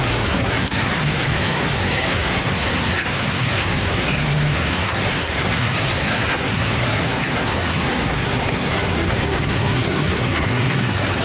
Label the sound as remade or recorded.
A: remade